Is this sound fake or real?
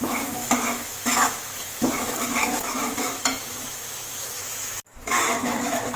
fake